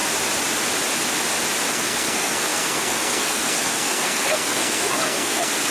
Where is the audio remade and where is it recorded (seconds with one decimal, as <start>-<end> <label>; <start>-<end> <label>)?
0.0-1.7 recorded; 1.7-5.7 remade